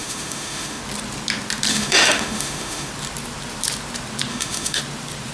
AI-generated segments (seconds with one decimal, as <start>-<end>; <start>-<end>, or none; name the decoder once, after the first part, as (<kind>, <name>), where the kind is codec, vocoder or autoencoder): 0.0-0.8 (autoencoder, DAC-VAE); 1.7-2.9; 4.3-4.8